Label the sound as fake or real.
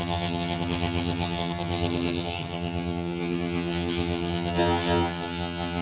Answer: fake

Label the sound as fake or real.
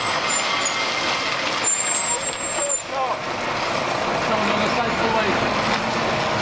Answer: real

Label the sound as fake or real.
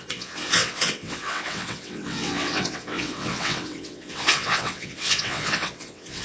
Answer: fake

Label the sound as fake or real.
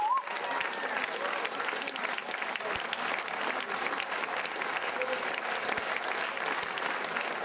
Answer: real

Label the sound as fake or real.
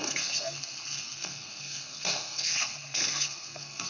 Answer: fake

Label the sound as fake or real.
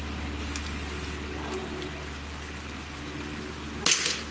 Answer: real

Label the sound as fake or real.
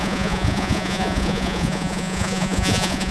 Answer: fake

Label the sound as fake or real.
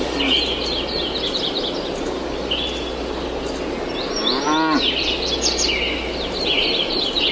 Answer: real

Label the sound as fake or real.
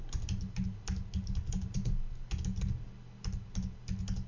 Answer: real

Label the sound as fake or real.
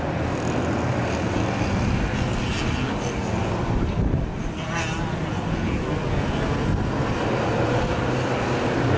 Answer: real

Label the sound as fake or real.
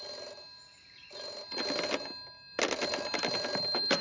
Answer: real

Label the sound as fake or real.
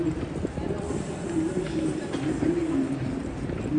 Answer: real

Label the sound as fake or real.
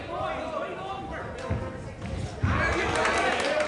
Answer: real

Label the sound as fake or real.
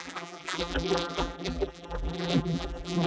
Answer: fake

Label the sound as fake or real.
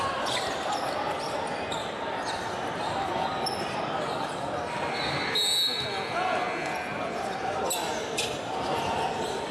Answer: real